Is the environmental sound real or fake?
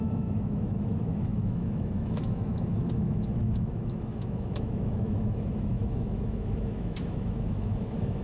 fake